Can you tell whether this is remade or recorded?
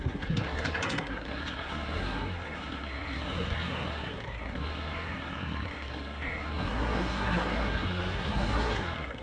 remade